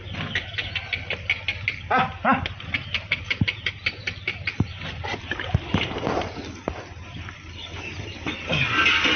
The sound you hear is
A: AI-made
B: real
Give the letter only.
B